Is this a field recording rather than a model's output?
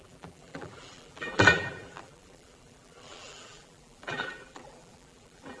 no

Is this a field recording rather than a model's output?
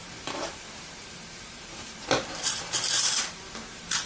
no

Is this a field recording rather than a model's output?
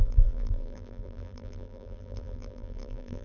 no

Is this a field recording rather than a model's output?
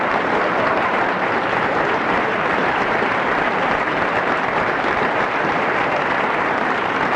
no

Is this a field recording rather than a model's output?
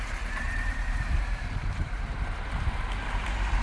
no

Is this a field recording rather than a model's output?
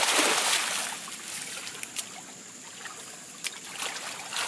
yes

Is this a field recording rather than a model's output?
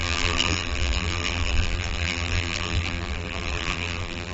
no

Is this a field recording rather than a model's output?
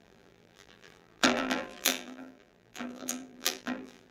no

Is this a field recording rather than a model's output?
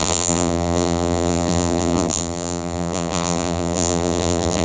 no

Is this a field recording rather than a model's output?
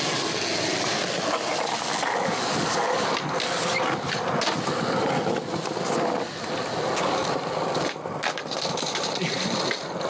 yes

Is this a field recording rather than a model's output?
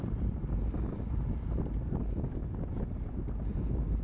yes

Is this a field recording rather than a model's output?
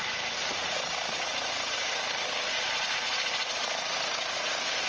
no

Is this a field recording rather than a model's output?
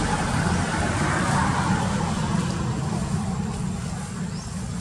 yes